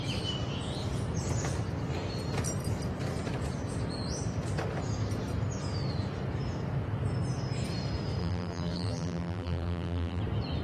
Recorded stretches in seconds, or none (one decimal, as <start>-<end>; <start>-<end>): 0.0-8.2; 10.2-10.6